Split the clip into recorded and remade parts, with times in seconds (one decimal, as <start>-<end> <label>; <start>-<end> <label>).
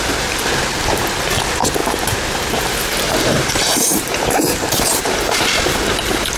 0.0-1.8 recorded; 1.8-5.2 remade; 5.2-6.4 recorded